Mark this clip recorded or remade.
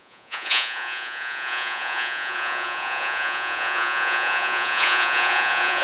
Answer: remade